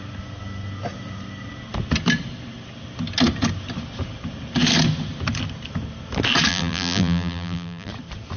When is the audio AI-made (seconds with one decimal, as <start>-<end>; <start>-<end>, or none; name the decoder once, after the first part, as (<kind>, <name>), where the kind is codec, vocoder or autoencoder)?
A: 6.5-7.9 (vocoder, BigVGAN v2)